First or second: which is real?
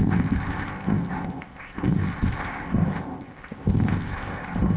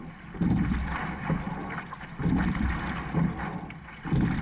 second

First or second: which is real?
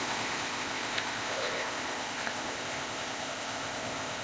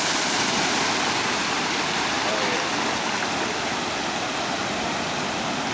second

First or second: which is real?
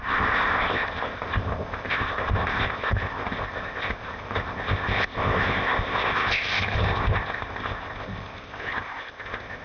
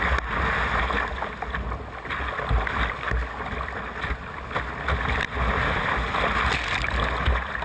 second